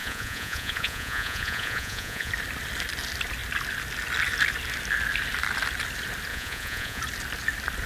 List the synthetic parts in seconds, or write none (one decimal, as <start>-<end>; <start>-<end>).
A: 0.0-2.3; 6.3-7.0